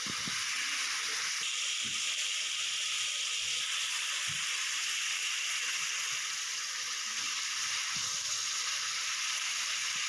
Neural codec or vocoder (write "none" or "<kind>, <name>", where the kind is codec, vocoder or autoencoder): none